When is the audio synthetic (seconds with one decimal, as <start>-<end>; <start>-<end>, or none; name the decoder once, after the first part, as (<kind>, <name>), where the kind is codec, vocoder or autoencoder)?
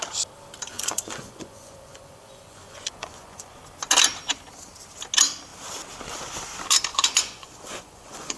0.7-3.6 (vocoder, Vocos); 6.9-8.4